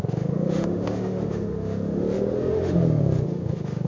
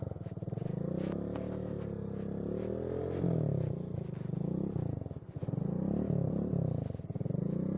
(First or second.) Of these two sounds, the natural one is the second